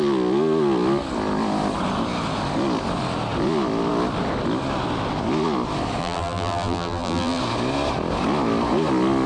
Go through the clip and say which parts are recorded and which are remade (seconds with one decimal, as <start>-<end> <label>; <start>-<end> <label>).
0.0-6.0 recorded; 6.0-7.4 remade; 7.4-9.3 recorded